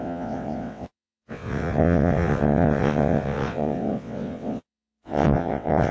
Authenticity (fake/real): fake